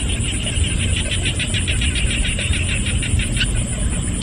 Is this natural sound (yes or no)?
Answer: yes